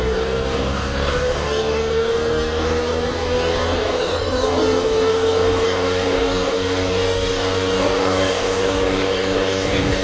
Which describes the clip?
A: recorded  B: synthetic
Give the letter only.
B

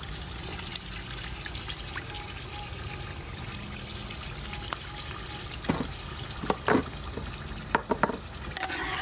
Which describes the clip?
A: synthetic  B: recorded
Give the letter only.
B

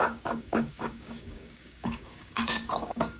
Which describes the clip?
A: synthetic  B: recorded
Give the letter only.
A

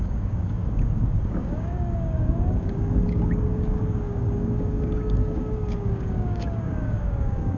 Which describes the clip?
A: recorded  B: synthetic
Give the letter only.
B